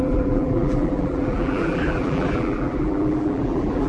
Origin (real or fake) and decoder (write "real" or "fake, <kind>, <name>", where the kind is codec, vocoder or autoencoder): fake, vocoder, BigVGAN v2